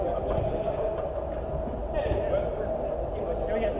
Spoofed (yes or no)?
no